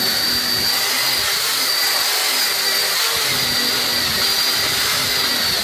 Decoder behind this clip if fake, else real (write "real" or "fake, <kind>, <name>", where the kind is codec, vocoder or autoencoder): real